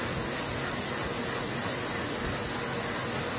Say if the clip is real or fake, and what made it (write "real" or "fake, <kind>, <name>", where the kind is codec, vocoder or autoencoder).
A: real